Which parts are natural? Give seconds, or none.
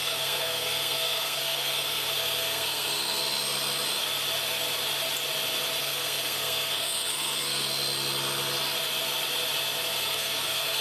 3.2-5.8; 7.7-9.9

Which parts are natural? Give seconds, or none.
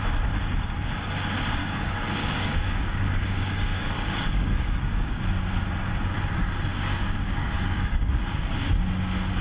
0.0-1.6; 5.2-6.7; 8.7-9.4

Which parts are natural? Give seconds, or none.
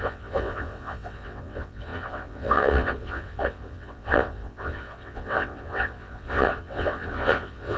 none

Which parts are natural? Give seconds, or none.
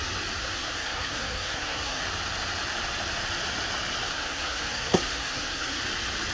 0.0-0.4; 2.0-4.1; 5.8-6.3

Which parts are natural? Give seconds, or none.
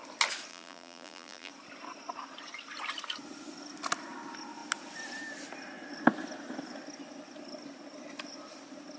0.0-0.5; 1.5-9.0